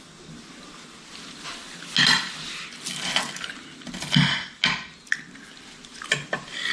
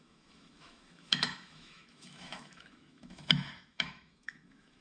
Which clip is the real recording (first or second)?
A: first